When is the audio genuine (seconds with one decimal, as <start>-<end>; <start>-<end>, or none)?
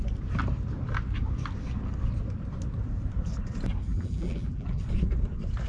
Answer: 0.0-3.9; 4.8-5.7